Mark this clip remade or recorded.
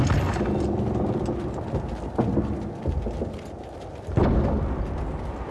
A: recorded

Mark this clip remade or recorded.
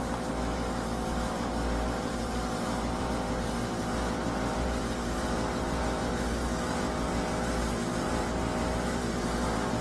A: remade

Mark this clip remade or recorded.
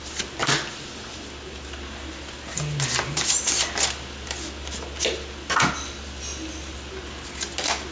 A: recorded